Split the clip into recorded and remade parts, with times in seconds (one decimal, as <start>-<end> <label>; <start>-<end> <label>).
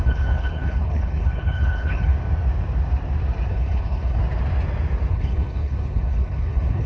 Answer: 0.0-2.1 remade; 2.1-3.5 recorded; 3.5-4.2 remade; 4.2-5.1 recorded; 5.1-6.9 remade